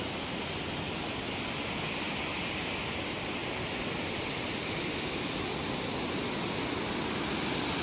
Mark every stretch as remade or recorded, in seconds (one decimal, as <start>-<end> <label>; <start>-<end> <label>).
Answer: 0.0-3.4 recorded; 3.4-4.4 remade; 4.4-7.8 recorded